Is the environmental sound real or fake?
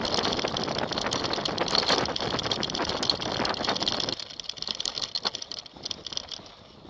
real